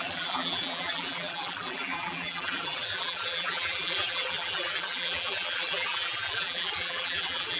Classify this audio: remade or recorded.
remade